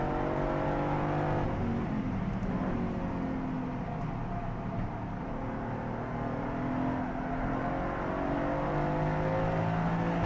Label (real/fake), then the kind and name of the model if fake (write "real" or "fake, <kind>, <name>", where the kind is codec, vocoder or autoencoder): real